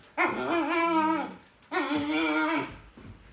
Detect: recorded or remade recorded